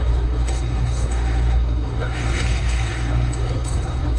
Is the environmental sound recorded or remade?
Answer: remade